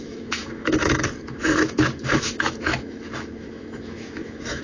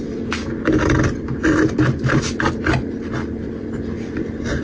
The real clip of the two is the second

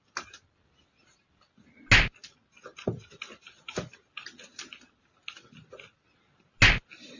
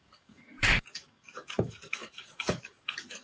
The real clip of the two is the first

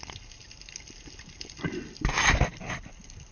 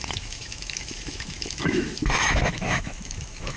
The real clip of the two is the first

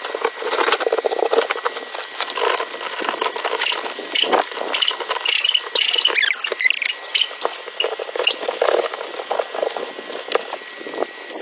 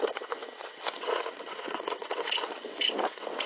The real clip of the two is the first